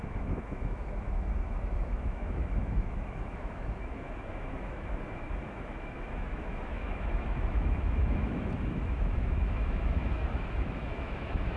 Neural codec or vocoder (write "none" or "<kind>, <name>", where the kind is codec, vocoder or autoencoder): autoencoder, DAC-VAE